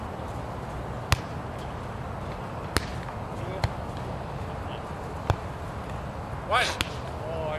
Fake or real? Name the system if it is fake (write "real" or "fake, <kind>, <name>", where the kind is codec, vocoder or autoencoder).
real